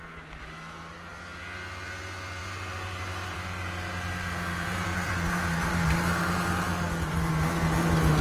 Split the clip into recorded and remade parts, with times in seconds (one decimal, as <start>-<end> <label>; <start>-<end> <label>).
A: 0.0-2.4 recorded; 2.4-7.3 remade; 7.3-8.2 recorded